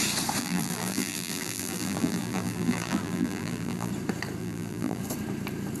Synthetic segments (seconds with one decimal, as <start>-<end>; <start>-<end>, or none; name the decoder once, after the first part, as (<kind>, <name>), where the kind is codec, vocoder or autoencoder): 0.4-3.9 (vocoder, BigVGAN v2); 4.4-5.0